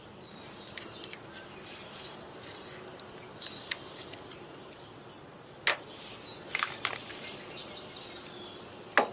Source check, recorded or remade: recorded